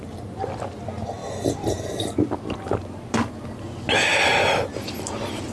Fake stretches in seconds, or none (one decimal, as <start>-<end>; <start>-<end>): none